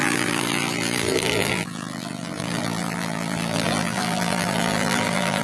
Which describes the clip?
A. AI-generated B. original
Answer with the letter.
A